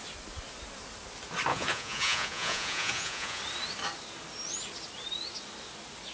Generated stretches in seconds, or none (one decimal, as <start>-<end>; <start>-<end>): 1.5-3.4